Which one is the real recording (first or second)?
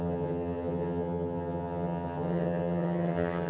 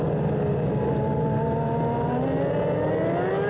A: second